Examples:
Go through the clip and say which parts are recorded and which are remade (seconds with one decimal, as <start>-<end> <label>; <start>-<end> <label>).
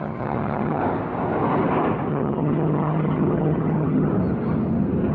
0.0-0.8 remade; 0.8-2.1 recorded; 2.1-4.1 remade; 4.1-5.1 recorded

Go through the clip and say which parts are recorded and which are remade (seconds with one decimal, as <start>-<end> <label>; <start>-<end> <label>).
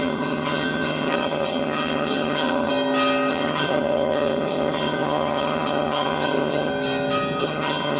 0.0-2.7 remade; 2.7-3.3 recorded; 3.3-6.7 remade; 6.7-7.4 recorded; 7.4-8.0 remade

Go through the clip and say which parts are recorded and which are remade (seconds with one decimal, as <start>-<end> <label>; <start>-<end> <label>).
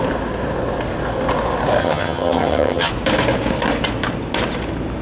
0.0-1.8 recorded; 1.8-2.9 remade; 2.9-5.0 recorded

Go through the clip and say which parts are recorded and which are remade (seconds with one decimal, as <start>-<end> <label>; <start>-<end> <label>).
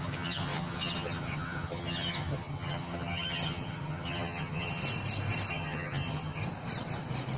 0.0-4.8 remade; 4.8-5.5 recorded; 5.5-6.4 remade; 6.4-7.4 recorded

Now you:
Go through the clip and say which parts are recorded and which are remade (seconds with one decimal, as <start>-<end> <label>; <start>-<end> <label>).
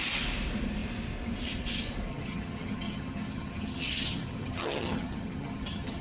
0.0-2.1 recorded; 2.1-6.0 remade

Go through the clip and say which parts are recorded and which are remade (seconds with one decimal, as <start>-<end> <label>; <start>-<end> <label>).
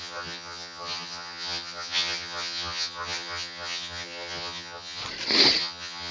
0.0-5.0 remade; 5.0-5.6 recorded; 5.6-6.1 remade